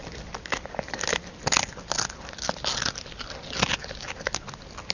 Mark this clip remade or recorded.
recorded